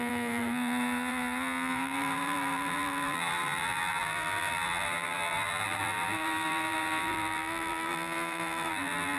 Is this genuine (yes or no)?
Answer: no